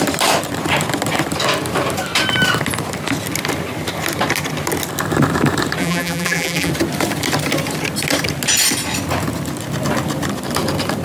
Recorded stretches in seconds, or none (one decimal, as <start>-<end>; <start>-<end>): 0.0-5.8; 6.7-11.0